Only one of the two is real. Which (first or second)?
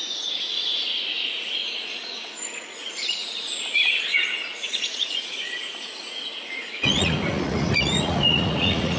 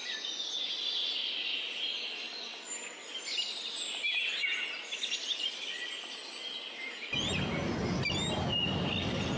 second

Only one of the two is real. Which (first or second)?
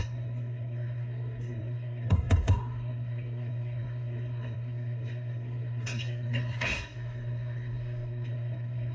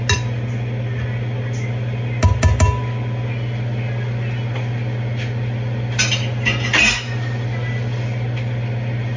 second